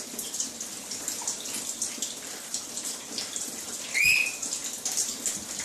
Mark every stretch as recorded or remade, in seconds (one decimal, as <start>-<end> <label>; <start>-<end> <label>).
0.0-5.6 recorded